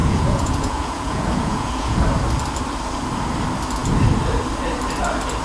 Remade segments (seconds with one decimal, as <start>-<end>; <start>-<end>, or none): 0.0-2.0